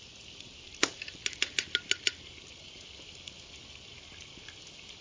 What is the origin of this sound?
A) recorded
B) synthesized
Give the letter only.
A